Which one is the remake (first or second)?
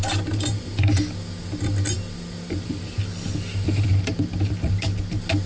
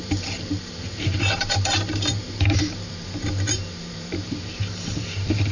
second